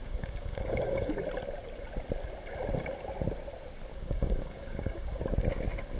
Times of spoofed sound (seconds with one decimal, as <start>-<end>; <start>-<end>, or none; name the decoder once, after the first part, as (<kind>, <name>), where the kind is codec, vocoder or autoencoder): 0.0-1.1 (codec, DAC); 3.9-5.2